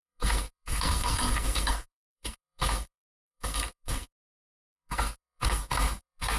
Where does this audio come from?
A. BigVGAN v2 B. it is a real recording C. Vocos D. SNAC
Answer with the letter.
D